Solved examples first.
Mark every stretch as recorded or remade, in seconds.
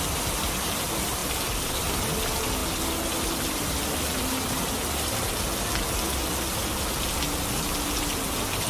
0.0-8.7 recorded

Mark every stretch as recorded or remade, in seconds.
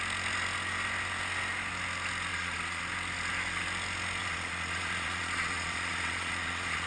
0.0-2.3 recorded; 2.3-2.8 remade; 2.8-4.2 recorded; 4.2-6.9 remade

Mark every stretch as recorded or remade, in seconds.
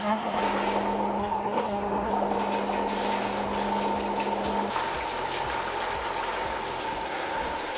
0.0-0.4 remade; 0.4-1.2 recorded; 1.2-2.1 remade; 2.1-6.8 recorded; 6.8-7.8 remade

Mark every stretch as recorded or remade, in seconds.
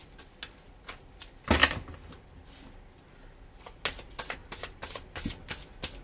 0.0-6.0 recorded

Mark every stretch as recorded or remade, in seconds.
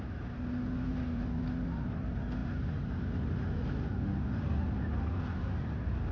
0.0-6.1 recorded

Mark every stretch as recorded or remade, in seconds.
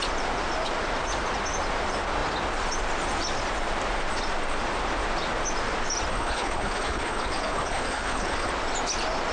0.0-6.1 recorded; 6.1-8.5 remade; 8.5-9.3 recorded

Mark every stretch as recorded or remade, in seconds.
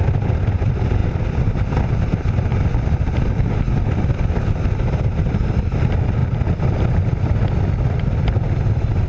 0.0-2.5 remade; 2.5-4.3 recorded; 4.3-9.1 remade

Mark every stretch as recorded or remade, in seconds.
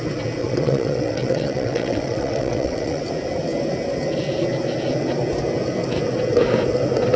0.0-0.4 recorded; 0.4-3.0 remade; 3.0-7.2 recorded